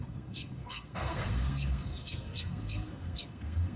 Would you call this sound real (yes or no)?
no